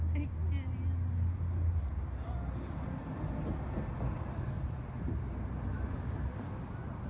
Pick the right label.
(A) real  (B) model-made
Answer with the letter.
A